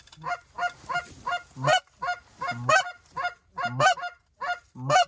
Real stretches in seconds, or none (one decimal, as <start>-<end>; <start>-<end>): 0.0-5.1